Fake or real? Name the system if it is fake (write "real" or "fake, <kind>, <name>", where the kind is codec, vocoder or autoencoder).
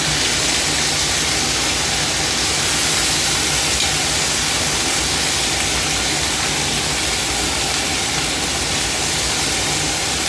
real